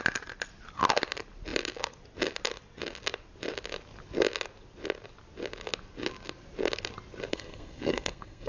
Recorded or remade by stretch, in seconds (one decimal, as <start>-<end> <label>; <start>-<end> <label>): 0.0-7.3 recorded; 7.3-8.5 remade